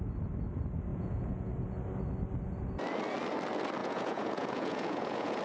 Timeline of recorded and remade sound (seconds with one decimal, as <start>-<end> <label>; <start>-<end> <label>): 0.0-0.9 recorded; 0.9-1.5 remade; 1.5-3.8 recorded; 3.8-5.4 remade